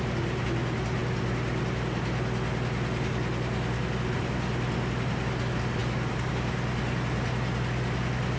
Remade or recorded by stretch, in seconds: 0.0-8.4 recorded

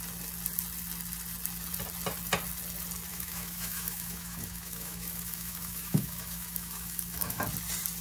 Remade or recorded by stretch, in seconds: 0.0-3.1 recorded; 3.1-7.4 remade; 7.4-8.0 recorded